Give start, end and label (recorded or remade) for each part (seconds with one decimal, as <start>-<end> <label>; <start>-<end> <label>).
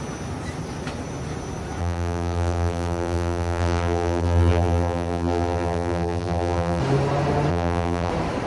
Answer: 0.0-1.8 recorded; 1.8-6.8 remade; 6.8-7.5 recorded; 7.5-8.1 remade; 8.1-8.5 recorded